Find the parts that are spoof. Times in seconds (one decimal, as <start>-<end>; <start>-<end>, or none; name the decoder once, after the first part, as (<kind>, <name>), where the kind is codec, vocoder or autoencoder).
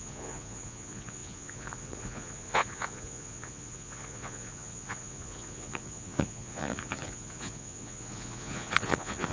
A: 0.0-9.3 (vocoder, Vocos)